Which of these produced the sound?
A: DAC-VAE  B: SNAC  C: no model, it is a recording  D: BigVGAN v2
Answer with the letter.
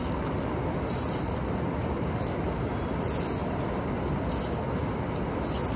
C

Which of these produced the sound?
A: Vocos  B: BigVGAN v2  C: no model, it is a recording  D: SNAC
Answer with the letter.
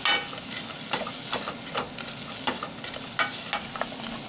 C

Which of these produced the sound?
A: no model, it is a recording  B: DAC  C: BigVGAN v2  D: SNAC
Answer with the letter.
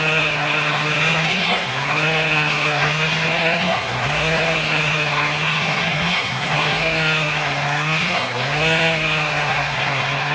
D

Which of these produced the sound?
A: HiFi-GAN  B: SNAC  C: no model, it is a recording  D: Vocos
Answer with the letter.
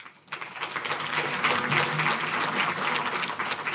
C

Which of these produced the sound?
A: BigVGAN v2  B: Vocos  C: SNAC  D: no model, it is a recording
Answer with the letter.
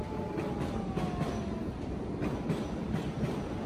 D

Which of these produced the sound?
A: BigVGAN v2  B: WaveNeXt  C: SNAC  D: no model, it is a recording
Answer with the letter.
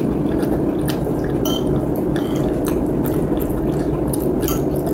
A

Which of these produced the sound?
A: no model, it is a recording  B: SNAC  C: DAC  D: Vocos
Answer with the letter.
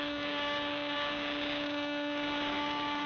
C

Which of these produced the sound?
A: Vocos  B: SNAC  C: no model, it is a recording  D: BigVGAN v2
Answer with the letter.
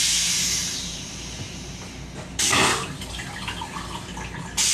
C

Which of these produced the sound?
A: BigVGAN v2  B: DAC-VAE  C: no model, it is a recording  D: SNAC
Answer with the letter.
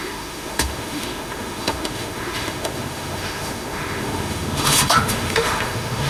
B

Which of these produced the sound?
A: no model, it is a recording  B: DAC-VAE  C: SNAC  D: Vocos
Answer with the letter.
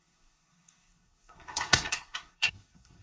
C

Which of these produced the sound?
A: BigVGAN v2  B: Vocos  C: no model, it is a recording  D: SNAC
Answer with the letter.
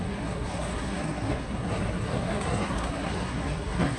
D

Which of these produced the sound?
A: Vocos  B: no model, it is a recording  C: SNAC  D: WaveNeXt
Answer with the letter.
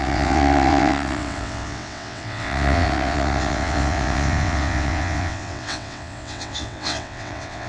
D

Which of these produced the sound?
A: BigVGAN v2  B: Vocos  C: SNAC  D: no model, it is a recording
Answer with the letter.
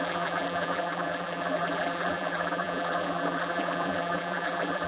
A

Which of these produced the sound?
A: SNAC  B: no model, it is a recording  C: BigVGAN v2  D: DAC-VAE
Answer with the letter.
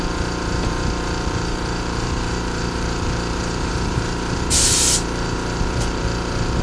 C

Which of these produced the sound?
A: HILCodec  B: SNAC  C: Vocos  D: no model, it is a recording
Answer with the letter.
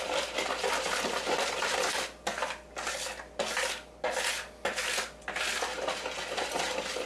D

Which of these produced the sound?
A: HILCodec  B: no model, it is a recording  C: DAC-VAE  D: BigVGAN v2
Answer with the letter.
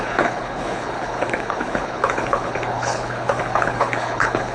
A